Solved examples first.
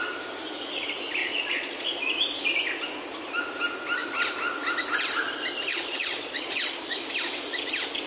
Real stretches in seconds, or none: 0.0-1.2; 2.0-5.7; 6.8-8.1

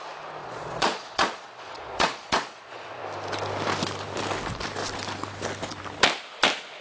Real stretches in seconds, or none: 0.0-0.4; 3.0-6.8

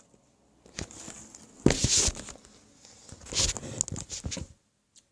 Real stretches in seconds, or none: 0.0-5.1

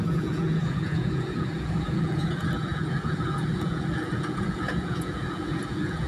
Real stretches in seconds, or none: none